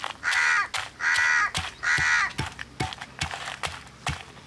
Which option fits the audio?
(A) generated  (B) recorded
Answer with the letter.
B